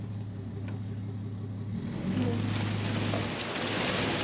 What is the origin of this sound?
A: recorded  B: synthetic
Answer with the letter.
A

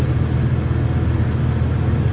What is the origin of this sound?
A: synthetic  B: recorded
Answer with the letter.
B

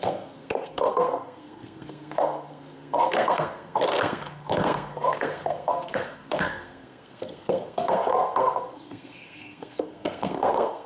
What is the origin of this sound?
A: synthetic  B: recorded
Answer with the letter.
A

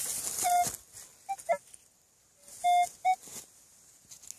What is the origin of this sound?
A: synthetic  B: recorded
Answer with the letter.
B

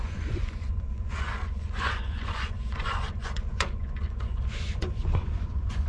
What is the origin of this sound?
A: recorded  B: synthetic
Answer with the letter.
B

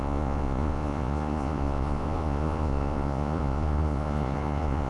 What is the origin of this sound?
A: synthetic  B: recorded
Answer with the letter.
A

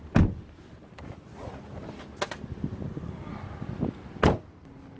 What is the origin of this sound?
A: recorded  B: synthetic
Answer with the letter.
A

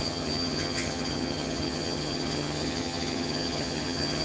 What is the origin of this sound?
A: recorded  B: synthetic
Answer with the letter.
B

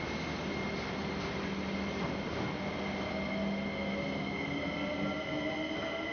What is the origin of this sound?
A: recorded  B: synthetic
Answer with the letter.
A